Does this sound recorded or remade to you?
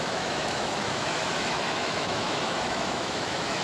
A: remade